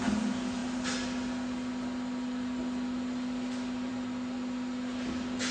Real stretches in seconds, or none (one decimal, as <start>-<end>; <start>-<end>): 0.0-5.5